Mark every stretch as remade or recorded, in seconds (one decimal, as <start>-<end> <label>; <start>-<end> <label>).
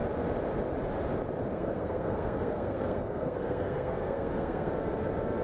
0.0-1.5 recorded; 1.5-4.7 remade; 4.7-5.4 recorded